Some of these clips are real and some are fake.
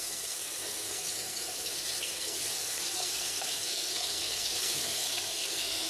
fake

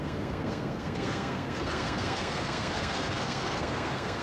fake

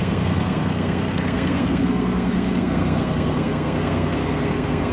fake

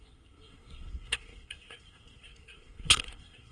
fake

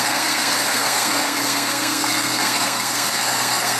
fake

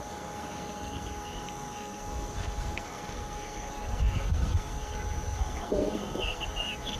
fake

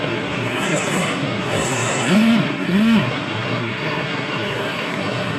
fake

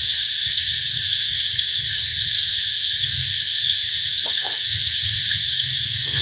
fake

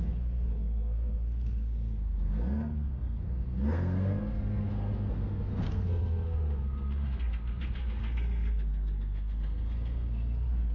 fake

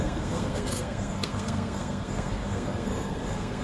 fake